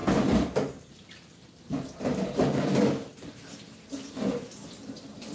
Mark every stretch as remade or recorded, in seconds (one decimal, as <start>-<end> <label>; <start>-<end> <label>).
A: 0.0-5.3 remade